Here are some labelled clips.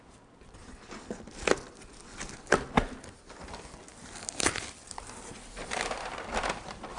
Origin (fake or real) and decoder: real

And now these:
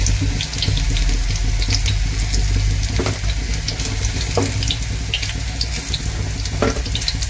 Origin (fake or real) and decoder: real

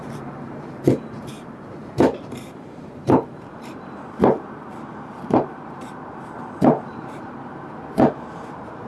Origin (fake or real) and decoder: fake, vocoder, BigVGAN v2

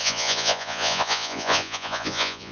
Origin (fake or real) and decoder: fake, vocoder, Vocos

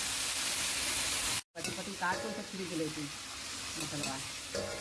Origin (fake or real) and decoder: real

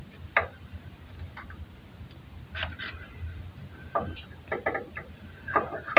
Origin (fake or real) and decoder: real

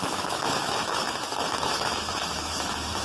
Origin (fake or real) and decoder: fake, autoencoder, DAC-VAE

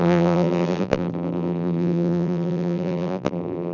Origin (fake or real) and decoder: fake, vocoder, BigVGAN v2